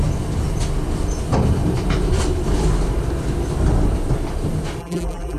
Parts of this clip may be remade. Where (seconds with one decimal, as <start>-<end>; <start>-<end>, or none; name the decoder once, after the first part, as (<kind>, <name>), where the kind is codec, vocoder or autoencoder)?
4.8-5.4 (vocoder, BigVGAN v2)